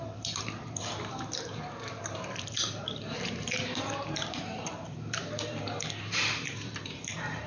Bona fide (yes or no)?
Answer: no